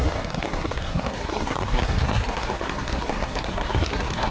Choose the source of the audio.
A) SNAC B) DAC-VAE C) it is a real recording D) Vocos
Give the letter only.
A